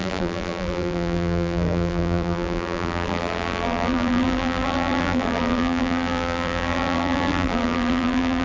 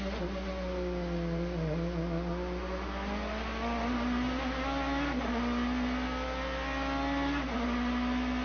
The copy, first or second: first